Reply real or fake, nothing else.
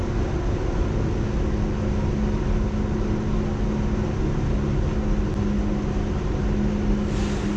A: real